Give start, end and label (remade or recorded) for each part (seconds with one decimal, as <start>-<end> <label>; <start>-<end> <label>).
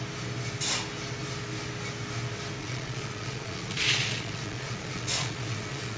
0.0-2.6 recorded; 2.6-6.0 remade